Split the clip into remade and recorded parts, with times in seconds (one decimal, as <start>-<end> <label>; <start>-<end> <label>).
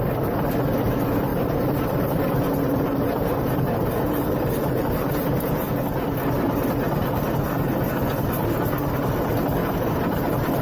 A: 0.0-1.3 recorded; 1.3-5.7 remade; 5.7-9.6 recorded; 9.6-10.6 remade